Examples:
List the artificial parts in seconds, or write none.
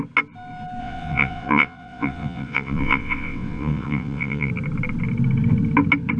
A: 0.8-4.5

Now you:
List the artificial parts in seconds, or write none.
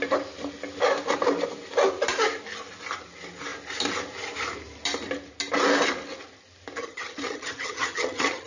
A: 6.8-8.5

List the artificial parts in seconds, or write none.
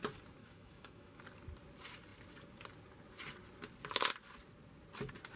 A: 0.4-1.2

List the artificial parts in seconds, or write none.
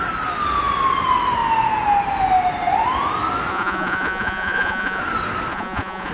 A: 3.5-5.0; 5.5-6.1